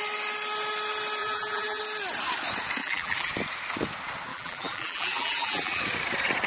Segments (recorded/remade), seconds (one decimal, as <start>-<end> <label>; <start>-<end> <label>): 0.0-1.2 recorded; 1.2-1.8 remade; 1.8-2.8 recorded; 2.8-3.3 remade; 3.3-4.3 recorded; 4.3-5.8 remade; 5.8-6.5 recorded